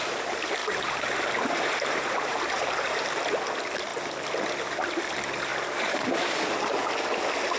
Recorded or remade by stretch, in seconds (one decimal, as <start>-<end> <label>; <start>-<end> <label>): 0.0-0.6 recorded; 0.6-3.0 remade; 3.0-5.5 recorded; 5.5-6.8 remade; 6.8-7.6 recorded